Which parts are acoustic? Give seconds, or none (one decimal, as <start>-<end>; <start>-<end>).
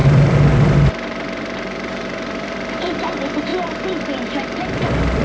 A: 3.1-3.5